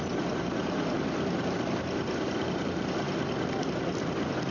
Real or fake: real